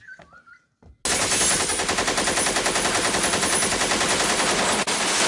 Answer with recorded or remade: recorded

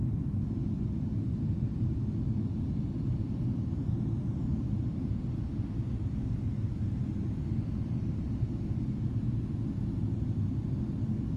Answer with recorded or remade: recorded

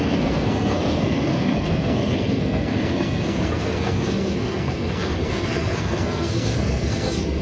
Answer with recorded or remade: remade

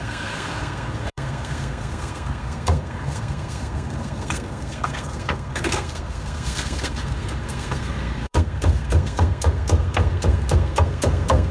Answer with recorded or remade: remade